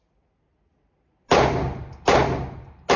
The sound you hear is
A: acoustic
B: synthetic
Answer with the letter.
A